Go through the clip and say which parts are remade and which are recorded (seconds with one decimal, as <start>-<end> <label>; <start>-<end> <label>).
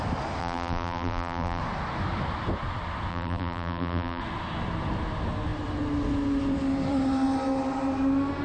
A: 0.0-0.4 recorded; 0.4-1.6 remade; 1.6-3.1 recorded; 3.1-4.2 remade; 4.2-8.4 recorded